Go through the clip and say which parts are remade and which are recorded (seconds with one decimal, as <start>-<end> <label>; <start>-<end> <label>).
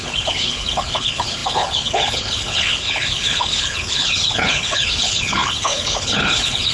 0.0-6.7 remade